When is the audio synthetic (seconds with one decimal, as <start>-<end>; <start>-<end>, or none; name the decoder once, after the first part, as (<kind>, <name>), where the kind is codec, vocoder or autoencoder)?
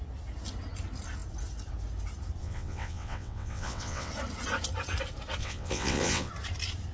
2.4-4.1 (vocoder, WaveNeXt); 5.4-6.3